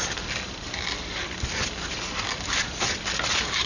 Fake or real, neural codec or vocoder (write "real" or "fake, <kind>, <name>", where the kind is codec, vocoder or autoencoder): real